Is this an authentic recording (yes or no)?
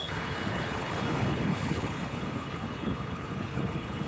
no